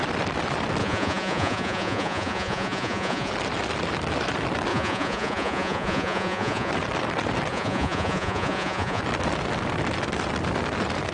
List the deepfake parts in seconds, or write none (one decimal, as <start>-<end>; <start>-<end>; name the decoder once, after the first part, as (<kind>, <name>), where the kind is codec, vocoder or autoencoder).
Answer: 0.8-3.3 (vocoder, Vocos); 4.7-6.7; 7.5-9.0